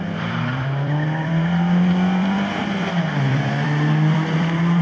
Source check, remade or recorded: remade